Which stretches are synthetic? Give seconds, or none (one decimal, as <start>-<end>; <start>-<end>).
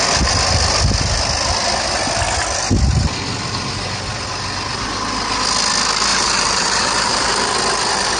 6.1-7.3